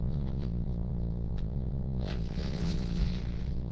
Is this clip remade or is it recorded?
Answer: remade